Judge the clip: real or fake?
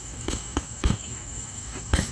fake